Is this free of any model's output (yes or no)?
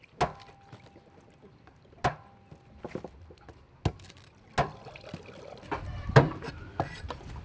yes